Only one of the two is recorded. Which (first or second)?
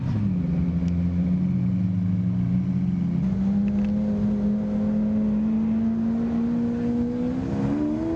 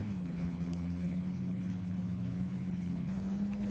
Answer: first